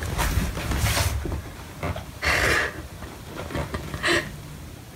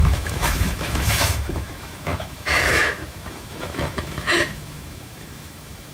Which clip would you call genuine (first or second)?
first